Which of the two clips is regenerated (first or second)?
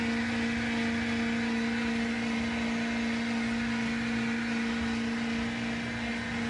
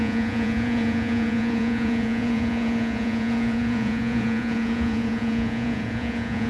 second